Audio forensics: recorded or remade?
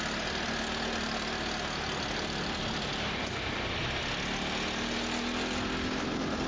recorded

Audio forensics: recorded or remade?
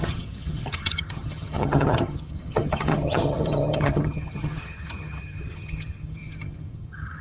remade